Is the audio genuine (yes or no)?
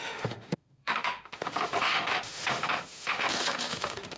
no